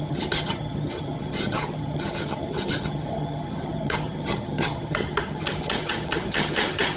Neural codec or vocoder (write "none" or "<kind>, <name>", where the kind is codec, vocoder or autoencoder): vocoder, HiFi-GAN